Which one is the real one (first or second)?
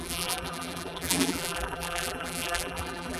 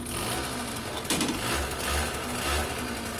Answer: second